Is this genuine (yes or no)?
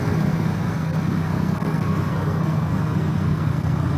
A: no